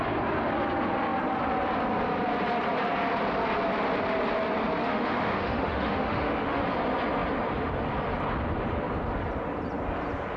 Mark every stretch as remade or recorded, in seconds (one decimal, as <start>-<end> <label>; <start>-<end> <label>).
0.0-4.8 recorded; 4.8-6.6 remade; 6.6-10.4 recorded